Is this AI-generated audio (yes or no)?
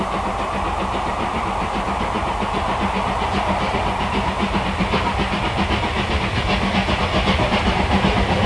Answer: no